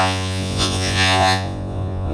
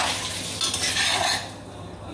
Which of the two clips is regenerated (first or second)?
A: first